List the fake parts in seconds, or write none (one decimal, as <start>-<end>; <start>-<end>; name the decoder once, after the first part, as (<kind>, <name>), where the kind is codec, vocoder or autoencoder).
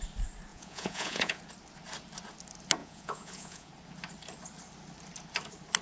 0.5-1.4 (vocoder, Vocos); 2.8-3.7